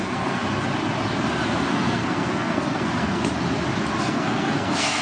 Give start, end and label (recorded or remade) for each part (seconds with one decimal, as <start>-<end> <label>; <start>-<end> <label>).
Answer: 0.0-0.4 remade; 0.4-1.7 recorded; 1.7-3.2 remade; 3.2-4.0 recorded; 4.0-5.0 remade